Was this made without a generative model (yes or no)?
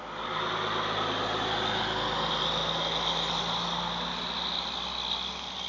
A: yes